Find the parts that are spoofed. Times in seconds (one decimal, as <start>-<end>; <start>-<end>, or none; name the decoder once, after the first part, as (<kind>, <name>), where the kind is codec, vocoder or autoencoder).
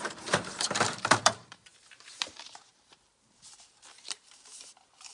0.0-5.1 (vocoder, BigVGAN v2)